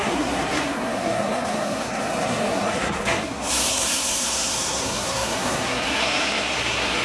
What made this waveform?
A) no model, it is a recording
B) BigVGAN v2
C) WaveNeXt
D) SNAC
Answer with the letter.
D